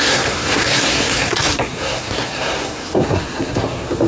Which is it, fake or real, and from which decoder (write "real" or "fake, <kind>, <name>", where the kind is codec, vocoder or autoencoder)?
fake, codec, SNAC